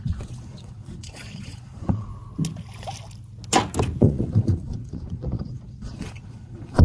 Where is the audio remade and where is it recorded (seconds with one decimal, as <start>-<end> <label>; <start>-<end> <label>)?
0.0-2.1 remade; 2.1-4.0 recorded; 4.0-6.8 remade